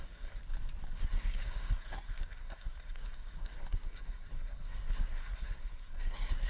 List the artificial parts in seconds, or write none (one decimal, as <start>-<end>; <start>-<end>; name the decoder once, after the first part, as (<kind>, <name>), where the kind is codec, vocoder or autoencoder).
0.0-0.4 (codec, SNAC); 1.0-6.5